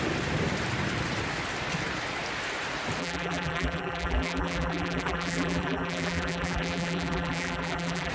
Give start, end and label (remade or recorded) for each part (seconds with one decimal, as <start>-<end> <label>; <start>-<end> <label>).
0.0-3.0 recorded; 3.0-8.1 remade